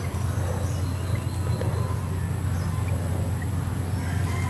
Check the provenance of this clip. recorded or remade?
recorded